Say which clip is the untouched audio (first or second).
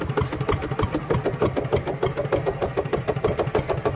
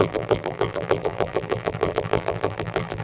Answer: first